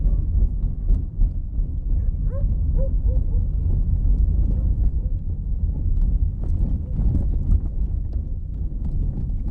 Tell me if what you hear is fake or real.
real